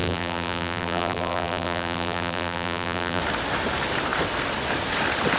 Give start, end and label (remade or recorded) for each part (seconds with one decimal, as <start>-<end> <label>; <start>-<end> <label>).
0.0-3.2 remade; 3.2-5.4 recorded